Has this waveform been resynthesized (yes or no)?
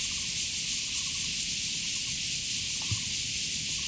no